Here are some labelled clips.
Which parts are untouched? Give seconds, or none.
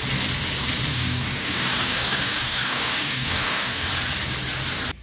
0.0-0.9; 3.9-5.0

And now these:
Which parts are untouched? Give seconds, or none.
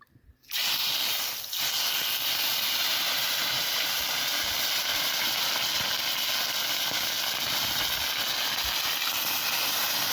0.0-2.5; 4.0-4.9; 5.5-10.1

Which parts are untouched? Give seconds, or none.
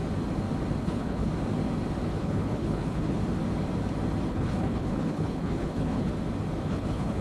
0.0-0.8; 1.3-2.2; 3.2-4.3; 6.1-6.7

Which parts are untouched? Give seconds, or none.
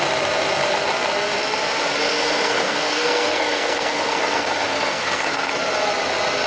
0.0-2.1; 5.5-6.5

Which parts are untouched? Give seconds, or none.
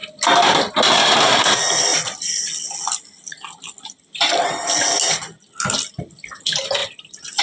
0.0-7.4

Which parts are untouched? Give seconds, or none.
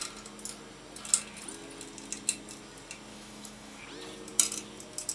0.0-3.1; 3.8-5.1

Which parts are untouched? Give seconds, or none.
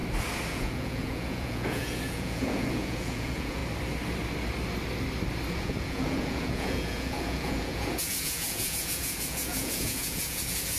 0.0-0.5; 3.6-5.5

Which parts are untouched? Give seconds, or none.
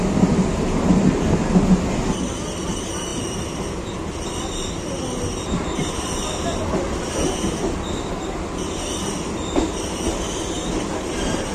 0.0-11.5